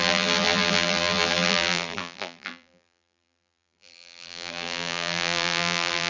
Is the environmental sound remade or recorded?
remade